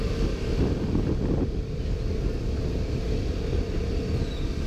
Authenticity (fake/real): real